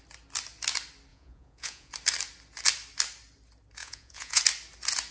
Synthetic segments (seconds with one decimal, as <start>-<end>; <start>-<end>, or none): 1.1-1.9; 3.8-4.4